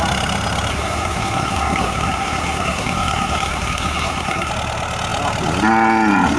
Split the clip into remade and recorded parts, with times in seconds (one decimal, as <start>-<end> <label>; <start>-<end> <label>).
0.0-0.7 recorded; 0.7-4.5 remade; 4.5-6.4 recorded